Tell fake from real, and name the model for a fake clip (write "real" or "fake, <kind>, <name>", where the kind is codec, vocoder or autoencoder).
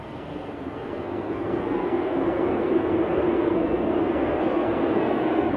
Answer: fake, codec, SNAC